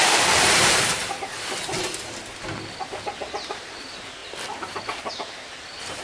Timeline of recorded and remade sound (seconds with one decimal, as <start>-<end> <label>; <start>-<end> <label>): 0.0-1.0 remade; 1.0-3.5 recorded; 3.5-4.2 remade; 4.2-5.1 recorded; 5.1-6.0 remade